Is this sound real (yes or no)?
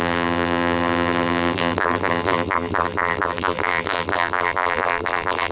no